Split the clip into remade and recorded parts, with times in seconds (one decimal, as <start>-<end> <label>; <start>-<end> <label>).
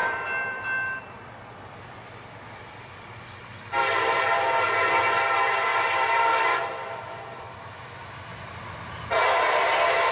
0.0-4.2 remade; 4.2-5.7 recorded; 5.7-8.4 remade; 8.4-10.1 recorded